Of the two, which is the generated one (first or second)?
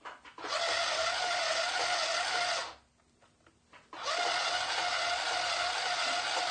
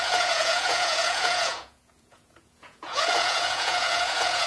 second